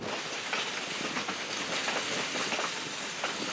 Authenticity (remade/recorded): recorded